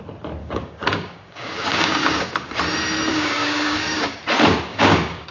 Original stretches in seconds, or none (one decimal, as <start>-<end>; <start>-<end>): 0.0-0.4; 2.6-3.1; 4.2-4.7

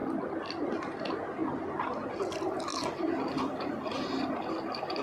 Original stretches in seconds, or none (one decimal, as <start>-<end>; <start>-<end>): 0.0-5.0

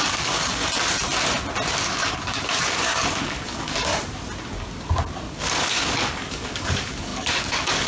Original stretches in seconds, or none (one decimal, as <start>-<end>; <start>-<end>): 0.6-1.7; 3.9-5.4

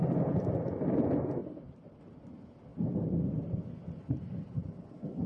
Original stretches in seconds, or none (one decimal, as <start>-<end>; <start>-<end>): 0.0-5.3

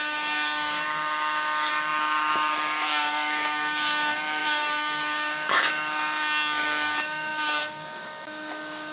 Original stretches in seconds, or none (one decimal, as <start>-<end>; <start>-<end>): none

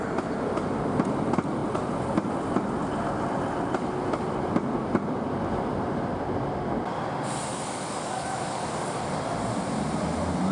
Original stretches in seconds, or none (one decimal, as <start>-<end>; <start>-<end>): 0.0-7.5; 9.1-10.5

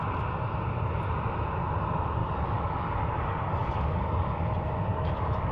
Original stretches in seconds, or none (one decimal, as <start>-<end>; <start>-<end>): 0.0-2.2; 4.2-4.9